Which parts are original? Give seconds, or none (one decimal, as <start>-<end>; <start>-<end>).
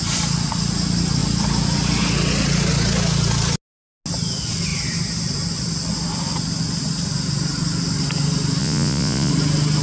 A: 0.0-8.6; 9.3-9.8